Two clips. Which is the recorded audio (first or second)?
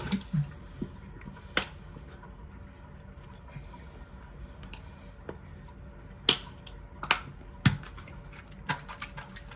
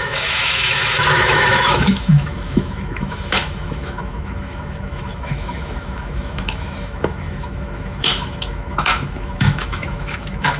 first